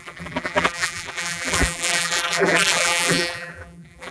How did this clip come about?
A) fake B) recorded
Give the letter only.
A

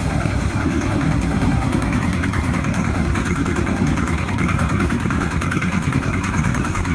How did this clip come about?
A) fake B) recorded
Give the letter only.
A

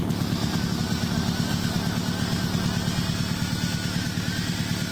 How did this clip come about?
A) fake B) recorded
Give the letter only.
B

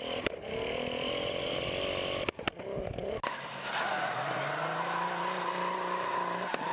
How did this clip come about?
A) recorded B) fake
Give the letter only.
A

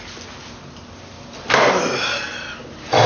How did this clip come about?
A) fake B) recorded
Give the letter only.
B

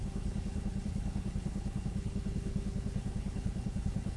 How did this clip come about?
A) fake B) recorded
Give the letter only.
A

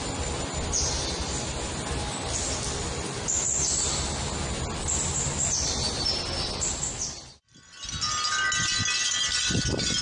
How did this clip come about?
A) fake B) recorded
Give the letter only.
B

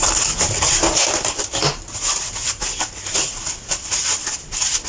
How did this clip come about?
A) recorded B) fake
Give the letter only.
A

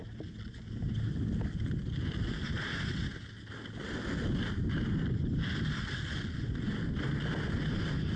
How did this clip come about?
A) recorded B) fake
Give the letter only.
A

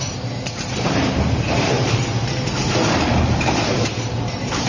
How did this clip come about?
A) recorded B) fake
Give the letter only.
B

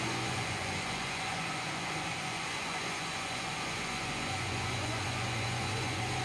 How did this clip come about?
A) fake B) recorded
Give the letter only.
A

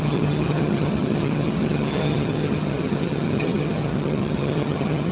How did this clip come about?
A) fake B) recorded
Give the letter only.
A